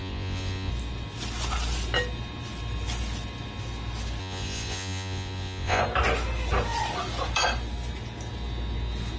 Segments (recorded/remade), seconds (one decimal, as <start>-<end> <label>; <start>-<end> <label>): 0.0-0.7 remade; 0.7-4.2 recorded; 4.2-5.8 remade; 5.8-9.2 recorded